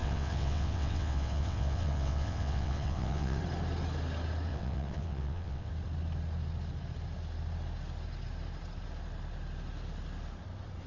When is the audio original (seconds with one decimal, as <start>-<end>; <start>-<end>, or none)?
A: 3.4-4.5; 5.7-10.9